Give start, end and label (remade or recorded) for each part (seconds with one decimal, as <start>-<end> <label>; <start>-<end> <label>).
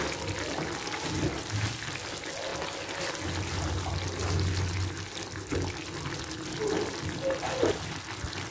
0.0-8.5 recorded